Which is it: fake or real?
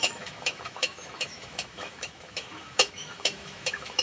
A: fake